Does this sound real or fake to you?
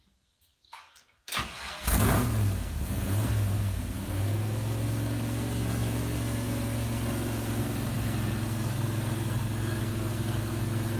fake